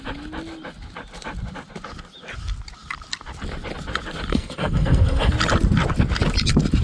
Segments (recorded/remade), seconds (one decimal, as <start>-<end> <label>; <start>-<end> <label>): 0.0-4.3 recorded; 4.3-5.3 remade; 5.3-6.8 recorded